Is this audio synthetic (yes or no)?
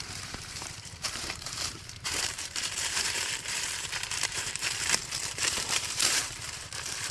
yes